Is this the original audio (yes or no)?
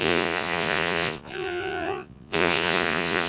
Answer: no